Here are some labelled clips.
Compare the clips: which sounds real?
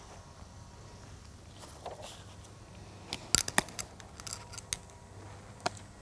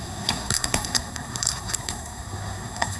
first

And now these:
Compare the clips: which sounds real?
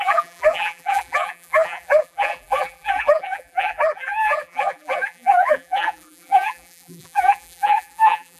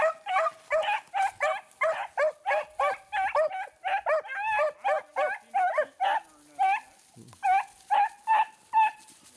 second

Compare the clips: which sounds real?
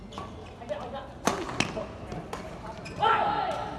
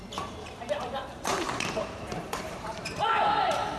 first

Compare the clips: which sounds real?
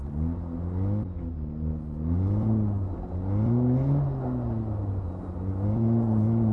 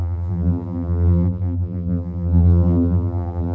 first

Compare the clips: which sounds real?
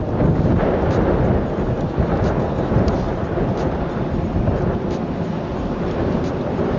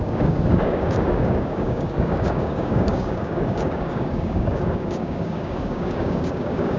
first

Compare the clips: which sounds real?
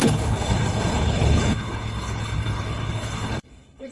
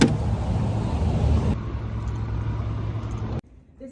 second